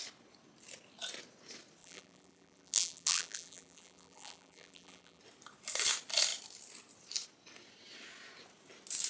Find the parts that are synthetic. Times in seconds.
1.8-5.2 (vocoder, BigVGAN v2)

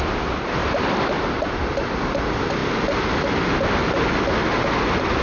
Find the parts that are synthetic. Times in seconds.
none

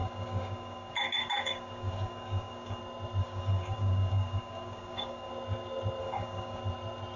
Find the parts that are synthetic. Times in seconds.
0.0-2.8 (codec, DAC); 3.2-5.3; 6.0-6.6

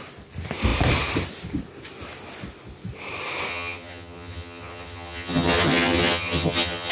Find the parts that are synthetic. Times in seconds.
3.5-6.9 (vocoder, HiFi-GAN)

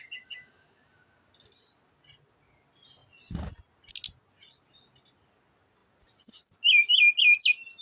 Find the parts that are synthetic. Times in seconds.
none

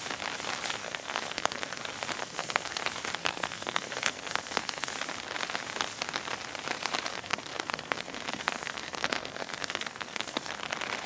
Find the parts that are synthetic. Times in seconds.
0.8-1.8 (codec, SNAC); 2.2-2.8; 3.2-4.9; 7.1-10.5